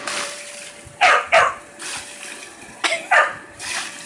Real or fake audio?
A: fake